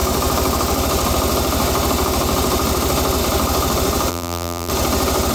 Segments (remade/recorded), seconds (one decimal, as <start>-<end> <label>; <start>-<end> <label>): 0.0-4.1 recorded; 4.1-4.7 remade; 4.7-5.3 recorded